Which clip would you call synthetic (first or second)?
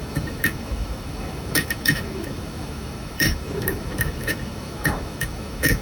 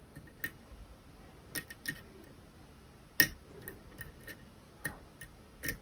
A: first